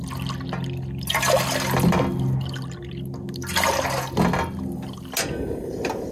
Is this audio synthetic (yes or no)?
no